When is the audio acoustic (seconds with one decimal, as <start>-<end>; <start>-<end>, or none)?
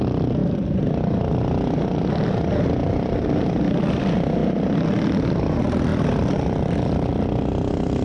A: 0.0-0.4; 1.8-2.8; 3.5-5.9; 7.1-8.0